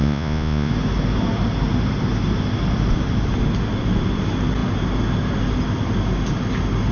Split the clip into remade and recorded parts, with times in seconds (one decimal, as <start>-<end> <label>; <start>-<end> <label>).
0.0-0.7 remade; 0.7-6.9 recorded